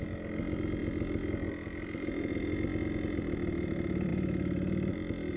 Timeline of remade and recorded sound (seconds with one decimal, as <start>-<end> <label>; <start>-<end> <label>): 0.0-5.4 recorded